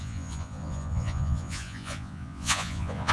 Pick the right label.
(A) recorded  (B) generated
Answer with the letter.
B